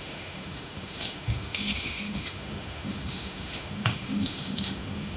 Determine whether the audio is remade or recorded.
remade